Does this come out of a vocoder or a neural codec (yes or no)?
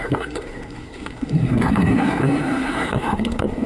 yes